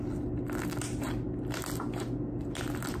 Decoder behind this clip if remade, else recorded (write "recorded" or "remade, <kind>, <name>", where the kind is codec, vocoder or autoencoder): recorded